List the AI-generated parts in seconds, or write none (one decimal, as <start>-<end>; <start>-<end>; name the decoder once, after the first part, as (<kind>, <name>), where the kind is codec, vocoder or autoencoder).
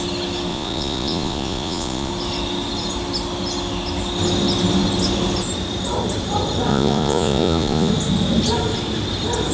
0.5-2.1 (vocoder, Vocos); 6.7-7.9